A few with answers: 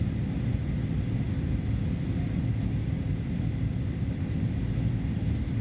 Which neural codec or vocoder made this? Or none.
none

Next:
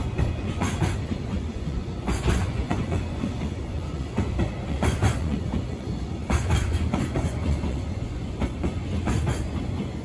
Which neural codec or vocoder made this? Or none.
vocoder, Vocos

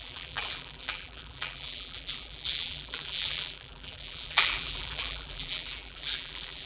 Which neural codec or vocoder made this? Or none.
vocoder, BigVGAN v2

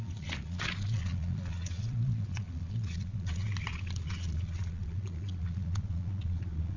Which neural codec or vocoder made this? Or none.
vocoder, Vocos